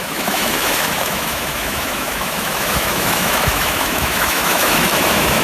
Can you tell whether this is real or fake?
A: fake